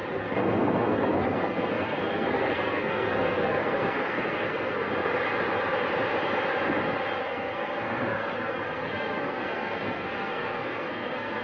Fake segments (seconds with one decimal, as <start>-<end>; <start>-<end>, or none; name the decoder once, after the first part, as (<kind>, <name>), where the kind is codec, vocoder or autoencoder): 0.0-4.9 (codec, SNAC); 7.2-11.4